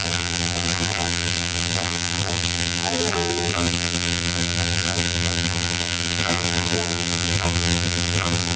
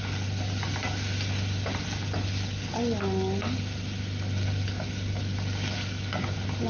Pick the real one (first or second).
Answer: second